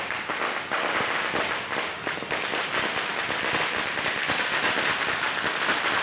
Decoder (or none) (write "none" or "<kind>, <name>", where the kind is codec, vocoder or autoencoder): none